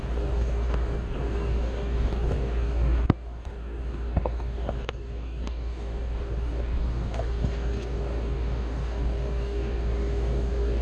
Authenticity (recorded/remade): remade